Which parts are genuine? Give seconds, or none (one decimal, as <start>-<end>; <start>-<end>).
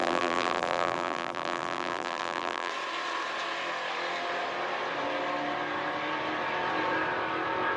2.7-7.8